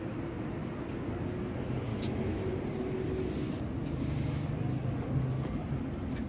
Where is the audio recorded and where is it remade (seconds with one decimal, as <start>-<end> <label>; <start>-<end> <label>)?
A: 0.0-1.9 recorded; 1.9-2.5 remade; 2.5-6.3 recorded